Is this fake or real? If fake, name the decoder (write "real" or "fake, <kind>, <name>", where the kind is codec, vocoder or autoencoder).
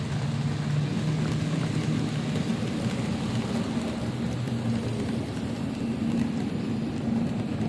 real